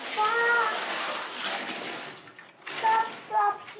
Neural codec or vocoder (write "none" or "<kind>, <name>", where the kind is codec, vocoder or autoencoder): none